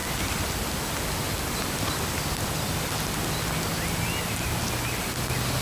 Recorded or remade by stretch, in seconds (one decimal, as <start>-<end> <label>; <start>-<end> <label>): 0.0-5.6 recorded